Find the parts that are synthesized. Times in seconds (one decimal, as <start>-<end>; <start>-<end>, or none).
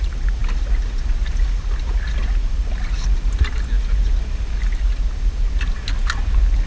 none